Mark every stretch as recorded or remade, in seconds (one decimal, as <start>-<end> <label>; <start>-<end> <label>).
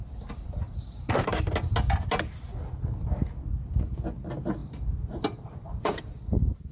0.0-4.6 recorded; 4.6-6.0 remade; 6.0-6.7 recorded